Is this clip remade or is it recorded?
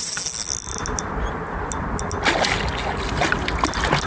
recorded